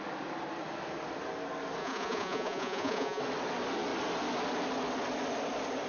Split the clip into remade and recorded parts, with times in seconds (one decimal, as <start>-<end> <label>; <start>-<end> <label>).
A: 0.0-1.8 recorded; 1.8-3.2 remade; 3.2-5.9 recorded